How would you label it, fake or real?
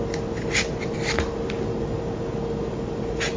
real